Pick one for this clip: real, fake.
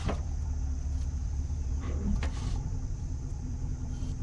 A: fake